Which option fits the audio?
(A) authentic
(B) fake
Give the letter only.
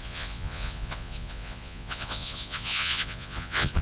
B